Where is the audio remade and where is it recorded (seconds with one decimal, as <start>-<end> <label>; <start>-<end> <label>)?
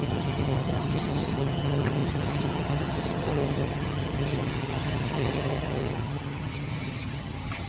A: 0.0-7.7 remade